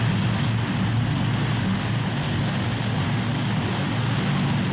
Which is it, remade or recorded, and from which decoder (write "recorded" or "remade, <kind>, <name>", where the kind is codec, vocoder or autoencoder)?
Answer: recorded